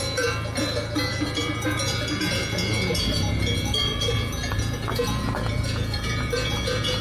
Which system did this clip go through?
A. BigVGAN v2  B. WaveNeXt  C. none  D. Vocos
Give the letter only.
D